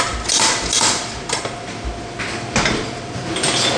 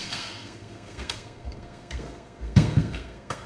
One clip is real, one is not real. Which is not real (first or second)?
second